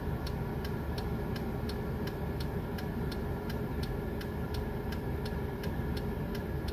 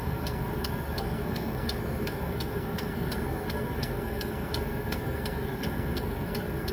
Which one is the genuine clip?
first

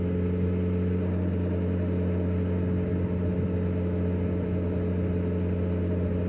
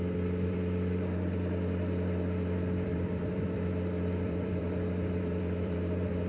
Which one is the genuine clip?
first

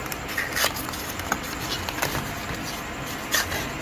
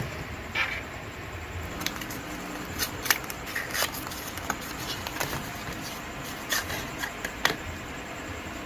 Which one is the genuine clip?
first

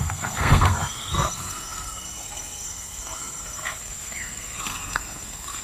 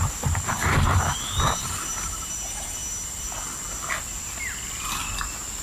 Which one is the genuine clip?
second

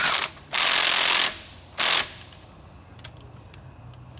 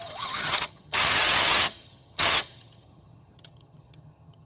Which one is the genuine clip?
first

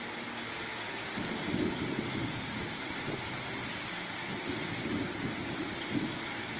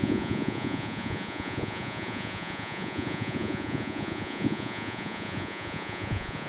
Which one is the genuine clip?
first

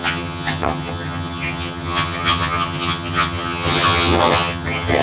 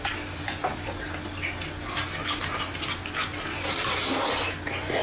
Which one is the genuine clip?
second